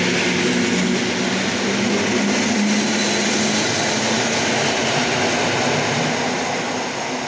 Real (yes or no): yes